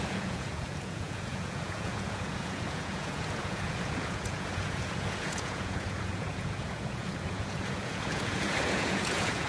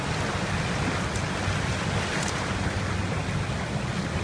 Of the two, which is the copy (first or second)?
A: first